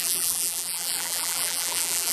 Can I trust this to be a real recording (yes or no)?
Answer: no